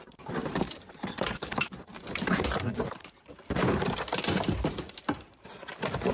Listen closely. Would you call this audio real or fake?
fake